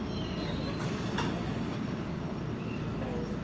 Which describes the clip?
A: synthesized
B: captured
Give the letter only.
B